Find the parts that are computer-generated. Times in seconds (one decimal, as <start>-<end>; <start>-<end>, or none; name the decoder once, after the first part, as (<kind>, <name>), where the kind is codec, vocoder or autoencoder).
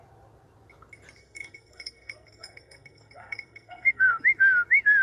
1.2-4.2 (codec, SNAC)